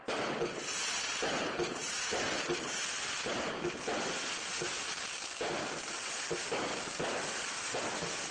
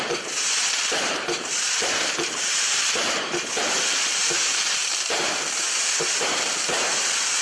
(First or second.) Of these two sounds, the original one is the first